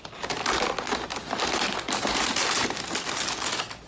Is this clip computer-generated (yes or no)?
no